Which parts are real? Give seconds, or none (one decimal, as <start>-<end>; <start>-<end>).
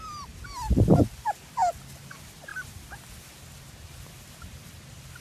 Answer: 0.0-5.2